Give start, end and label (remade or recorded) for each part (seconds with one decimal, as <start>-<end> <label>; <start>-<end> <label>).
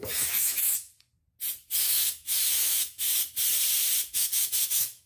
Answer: 0.0-0.9 remade; 0.9-1.8 recorded; 1.8-3.1 remade; 3.1-4.0 recorded; 4.0-5.1 remade